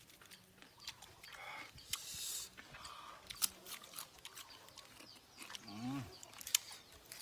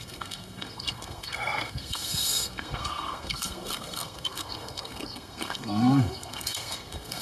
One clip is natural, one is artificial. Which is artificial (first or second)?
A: second